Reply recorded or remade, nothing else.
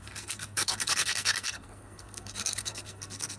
remade